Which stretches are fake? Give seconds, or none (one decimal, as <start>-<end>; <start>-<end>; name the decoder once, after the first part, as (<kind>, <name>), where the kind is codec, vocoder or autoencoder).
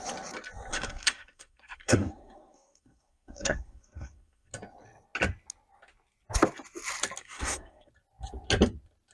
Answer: 0.7-4.5 (codec, SNAC); 7.2-7.9